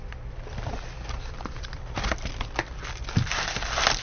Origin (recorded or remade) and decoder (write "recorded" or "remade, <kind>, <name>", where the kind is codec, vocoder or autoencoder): remade, vocoder, BigVGAN v2